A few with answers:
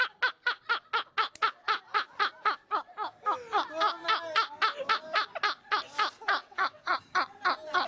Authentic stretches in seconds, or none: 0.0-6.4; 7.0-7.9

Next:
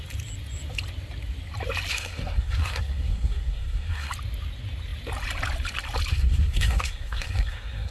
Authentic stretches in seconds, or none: 0.0-1.9; 4.1-6.1

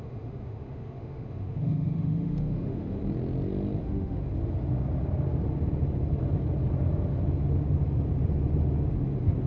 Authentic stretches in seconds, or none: 3.0-3.8; 4.2-9.5

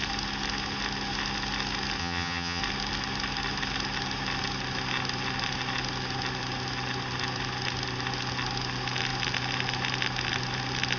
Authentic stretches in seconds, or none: 0.0-2.0; 2.6-11.0